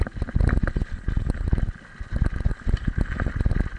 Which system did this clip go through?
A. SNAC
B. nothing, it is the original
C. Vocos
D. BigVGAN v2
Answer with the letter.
B